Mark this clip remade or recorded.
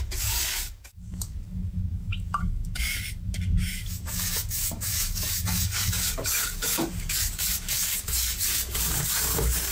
remade